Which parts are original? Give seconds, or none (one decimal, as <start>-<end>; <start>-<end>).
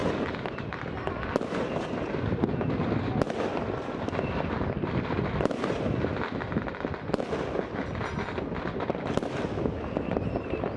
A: 0.0-10.8